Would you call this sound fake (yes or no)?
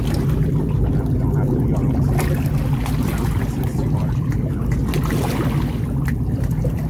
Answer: no